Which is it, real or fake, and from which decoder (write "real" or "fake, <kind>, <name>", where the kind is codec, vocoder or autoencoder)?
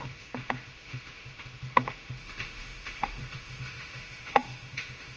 fake, autoencoder, DAC-VAE